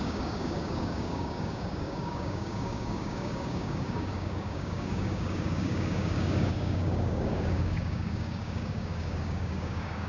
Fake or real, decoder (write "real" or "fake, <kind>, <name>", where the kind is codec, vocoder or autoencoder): fake, codec, DAC